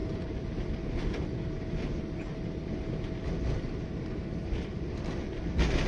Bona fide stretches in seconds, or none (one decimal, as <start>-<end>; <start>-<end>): 2.7-4.4; 5.3-5.9